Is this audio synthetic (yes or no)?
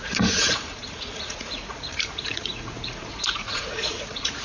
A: yes